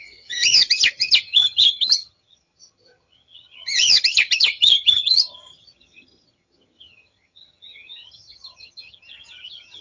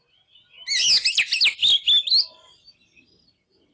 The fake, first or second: first